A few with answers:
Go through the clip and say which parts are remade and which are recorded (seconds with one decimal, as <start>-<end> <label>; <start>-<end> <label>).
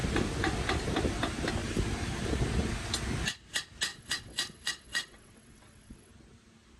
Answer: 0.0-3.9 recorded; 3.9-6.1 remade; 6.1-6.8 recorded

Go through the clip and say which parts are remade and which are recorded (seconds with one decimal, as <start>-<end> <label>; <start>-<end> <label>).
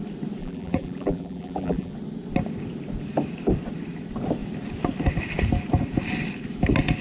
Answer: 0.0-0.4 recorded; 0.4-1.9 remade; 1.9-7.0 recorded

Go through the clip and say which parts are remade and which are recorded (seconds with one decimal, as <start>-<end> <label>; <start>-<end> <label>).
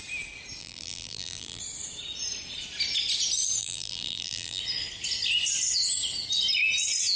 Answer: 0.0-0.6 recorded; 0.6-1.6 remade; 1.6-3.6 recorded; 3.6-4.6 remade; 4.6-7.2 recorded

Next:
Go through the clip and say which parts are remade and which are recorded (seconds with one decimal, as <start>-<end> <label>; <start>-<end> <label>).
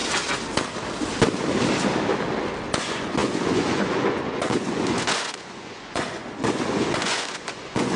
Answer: 0.0-2.8 recorded; 2.8-8.0 remade